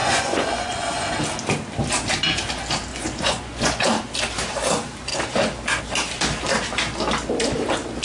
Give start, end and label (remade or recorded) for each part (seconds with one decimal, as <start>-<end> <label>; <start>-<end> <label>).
0.0-1.1 remade; 1.1-2.9 recorded; 2.9-3.8 remade; 3.8-8.0 recorded